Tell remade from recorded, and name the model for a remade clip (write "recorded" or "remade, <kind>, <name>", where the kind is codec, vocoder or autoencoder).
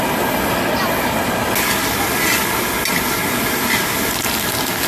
recorded